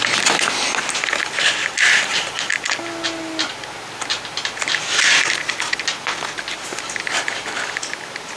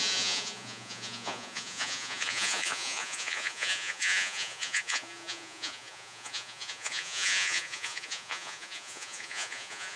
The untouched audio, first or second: first